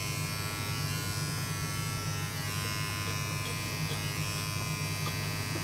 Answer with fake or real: real